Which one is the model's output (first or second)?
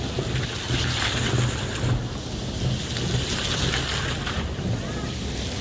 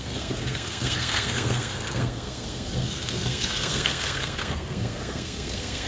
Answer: second